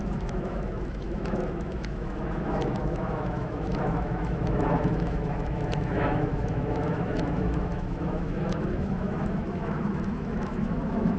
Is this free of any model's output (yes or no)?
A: no